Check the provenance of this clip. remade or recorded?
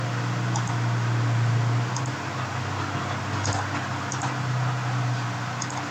recorded